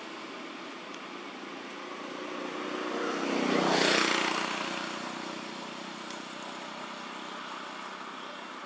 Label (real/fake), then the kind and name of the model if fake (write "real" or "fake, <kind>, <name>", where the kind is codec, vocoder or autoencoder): real